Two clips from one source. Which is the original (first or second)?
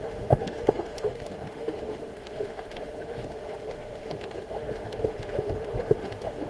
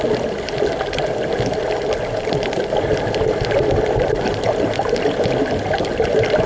second